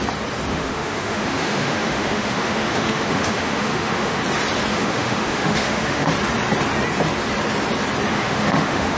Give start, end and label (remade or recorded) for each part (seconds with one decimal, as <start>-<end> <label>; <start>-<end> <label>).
0.0-0.5 recorded; 0.5-4.2 remade; 4.2-4.7 recorded; 4.7-6.1 remade; 6.1-8.1 recorded; 8.1-9.0 remade